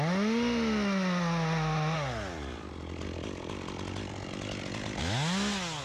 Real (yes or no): yes